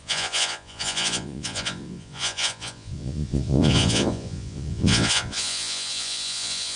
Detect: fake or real fake